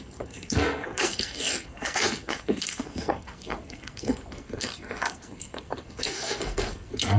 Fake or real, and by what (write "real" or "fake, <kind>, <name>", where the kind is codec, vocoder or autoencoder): fake, codec, SNAC